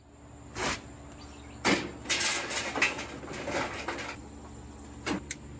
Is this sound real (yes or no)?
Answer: yes